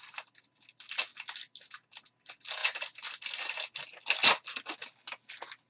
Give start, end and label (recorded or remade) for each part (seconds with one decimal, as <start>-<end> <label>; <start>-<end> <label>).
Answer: 0.0-5.7 recorded